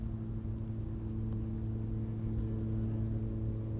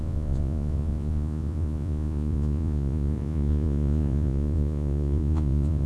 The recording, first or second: first